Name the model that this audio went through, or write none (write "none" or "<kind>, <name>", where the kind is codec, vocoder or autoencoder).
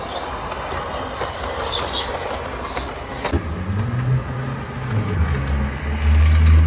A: none